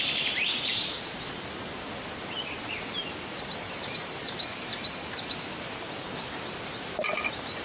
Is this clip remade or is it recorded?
remade